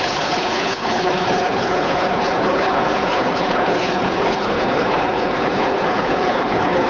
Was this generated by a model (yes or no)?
yes